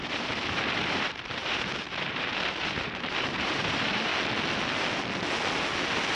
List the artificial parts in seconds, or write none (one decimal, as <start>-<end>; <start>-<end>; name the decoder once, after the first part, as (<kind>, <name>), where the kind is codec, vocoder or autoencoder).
0.0-4.1 (vocoder, BigVGAN v2)